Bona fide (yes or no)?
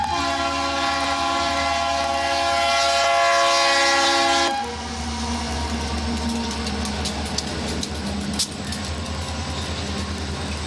yes